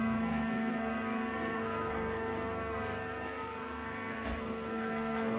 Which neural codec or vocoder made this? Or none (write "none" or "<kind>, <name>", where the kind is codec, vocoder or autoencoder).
codec, SNAC